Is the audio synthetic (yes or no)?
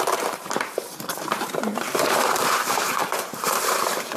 yes